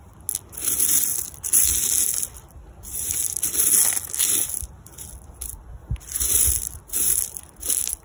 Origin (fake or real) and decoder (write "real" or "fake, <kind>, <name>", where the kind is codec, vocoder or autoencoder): real